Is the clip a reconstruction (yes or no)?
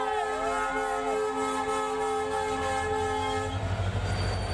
no